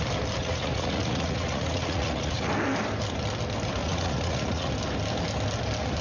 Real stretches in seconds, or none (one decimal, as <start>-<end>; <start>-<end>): 0.0-0.4; 2.5-3.8; 4.7-6.0